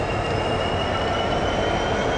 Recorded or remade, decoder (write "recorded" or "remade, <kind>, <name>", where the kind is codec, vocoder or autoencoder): recorded